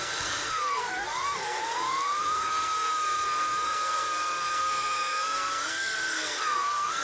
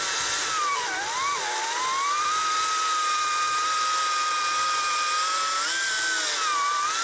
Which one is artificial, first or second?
first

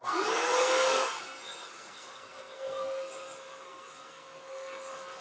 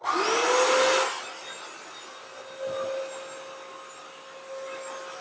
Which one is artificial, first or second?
first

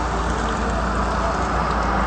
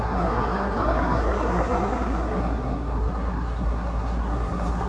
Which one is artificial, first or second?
second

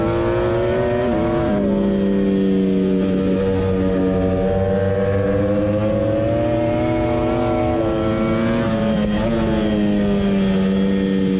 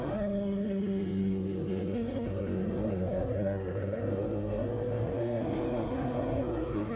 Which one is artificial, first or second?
second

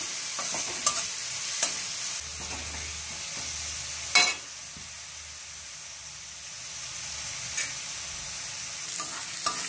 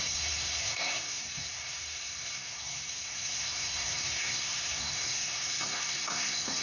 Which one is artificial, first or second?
second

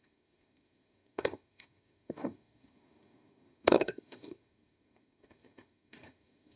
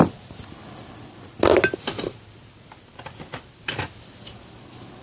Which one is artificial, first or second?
first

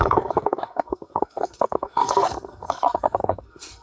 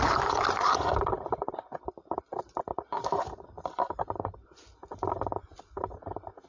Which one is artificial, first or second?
first